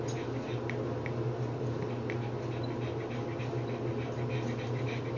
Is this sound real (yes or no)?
yes